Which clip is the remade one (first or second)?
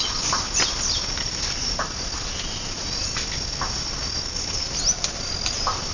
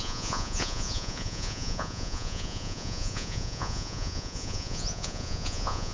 second